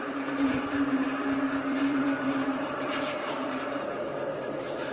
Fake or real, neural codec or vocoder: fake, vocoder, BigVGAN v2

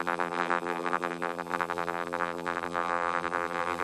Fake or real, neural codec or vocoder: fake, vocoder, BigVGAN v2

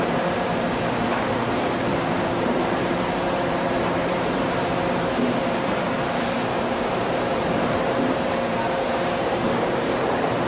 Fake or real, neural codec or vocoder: fake, vocoder, BigVGAN v2